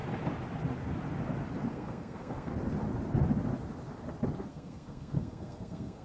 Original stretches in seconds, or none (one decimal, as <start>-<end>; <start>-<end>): 0.0-1.7; 2.5-4.5